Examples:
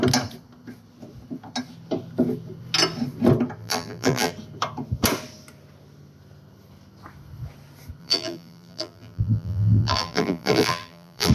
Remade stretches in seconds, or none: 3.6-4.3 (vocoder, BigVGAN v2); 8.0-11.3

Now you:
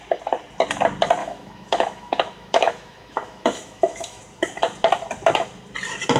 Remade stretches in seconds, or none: 1.2-4.2 (autoencoder, DAC-VAE)

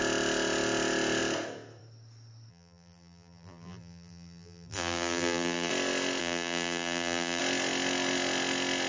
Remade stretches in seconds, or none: 2.5-5.7 (vocoder, BigVGAN v2); 6.2-7.4